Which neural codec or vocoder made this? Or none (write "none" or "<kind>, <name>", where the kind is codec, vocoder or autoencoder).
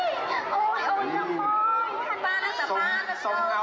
none